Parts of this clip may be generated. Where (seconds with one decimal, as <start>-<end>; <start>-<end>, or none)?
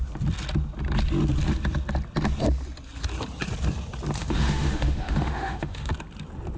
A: 4.2-5.9